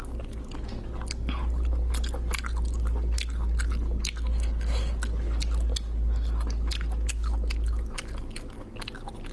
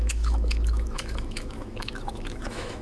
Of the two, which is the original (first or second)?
first